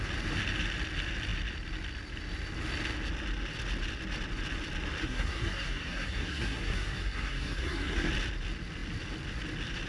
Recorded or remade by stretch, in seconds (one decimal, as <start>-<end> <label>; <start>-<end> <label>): 0.0-5.0 recorded; 5.0-8.1 remade; 8.1-9.9 recorded

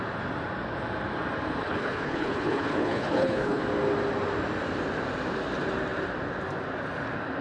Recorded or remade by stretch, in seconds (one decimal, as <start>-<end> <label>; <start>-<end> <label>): 0.0-1.6 recorded; 1.6-3.6 remade; 3.6-7.4 recorded